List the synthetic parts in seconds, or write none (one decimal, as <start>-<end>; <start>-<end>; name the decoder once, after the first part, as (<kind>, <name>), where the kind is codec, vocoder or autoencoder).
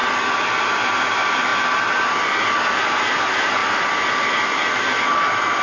1.0-1.5 (vocoder, BigVGAN v2); 2.0-3.6; 4.8-5.6